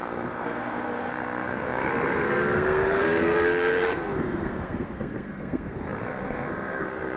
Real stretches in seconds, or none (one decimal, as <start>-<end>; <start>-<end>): none